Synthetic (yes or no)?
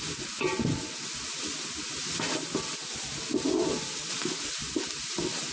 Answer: no